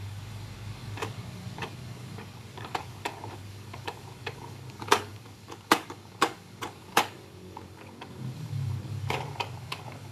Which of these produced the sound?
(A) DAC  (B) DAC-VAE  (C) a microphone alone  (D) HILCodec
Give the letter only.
A